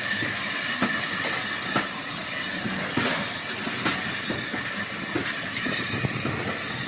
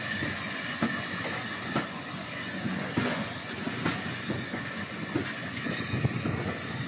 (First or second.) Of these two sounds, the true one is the first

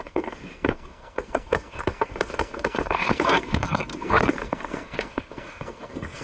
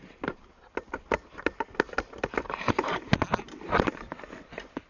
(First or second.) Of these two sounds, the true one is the second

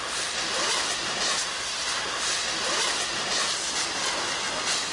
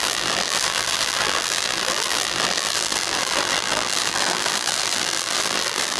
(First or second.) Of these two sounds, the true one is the first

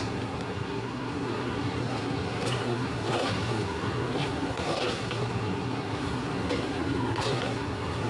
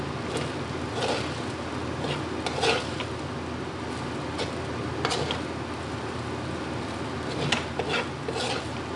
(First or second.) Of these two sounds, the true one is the second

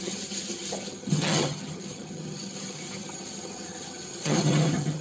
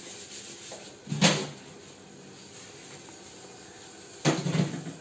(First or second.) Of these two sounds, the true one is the second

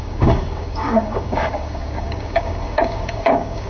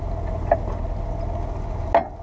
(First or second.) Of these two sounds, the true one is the second